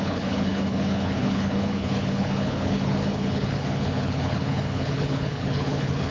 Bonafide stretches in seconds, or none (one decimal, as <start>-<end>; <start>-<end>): none

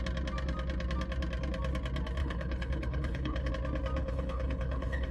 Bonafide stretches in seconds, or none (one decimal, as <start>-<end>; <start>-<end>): 0.0-2.2; 3.5-4.0

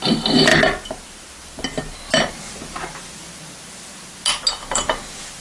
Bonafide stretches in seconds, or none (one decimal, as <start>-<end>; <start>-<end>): 0.0-5.4

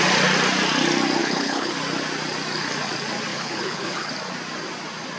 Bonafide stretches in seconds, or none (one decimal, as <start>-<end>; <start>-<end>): 0.0-1.2; 1.7-3.3; 4.1-5.2

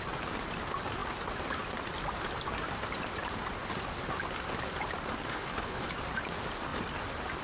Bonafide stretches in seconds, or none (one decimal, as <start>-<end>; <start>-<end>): 0.0-5.3; 5.9-7.4